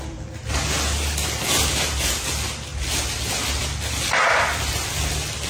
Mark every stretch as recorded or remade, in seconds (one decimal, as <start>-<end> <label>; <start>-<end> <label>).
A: 0.0-5.5 recorded